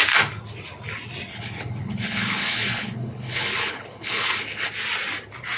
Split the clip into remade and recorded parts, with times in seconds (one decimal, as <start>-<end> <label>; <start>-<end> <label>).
0.0-1.3 recorded; 1.3-4.7 remade; 4.7-5.6 recorded